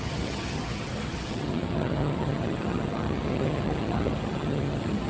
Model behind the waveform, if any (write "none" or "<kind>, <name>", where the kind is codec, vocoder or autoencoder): vocoder, HiFi-GAN